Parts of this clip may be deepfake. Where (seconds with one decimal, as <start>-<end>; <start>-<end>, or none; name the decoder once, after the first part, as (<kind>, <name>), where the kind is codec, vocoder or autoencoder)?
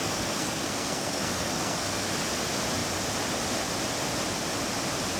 0.0-2.1 (codec, SNAC)